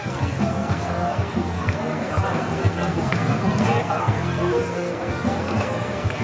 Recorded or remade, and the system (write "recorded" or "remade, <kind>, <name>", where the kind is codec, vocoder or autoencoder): remade, codec, SNAC